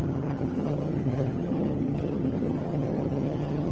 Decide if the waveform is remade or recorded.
remade